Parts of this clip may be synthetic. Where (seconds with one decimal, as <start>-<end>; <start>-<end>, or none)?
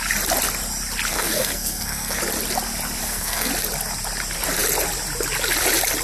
1.1-2.2; 3.0-3.5